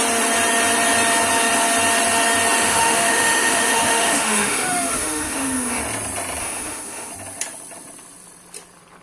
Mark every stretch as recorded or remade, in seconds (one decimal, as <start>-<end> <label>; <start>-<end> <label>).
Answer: 0.0-2.6 recorded; 2.6-5.8 remade; 5.8-6.4 recorded; 6.4-7.1 remade; 7.1-9.0 recorded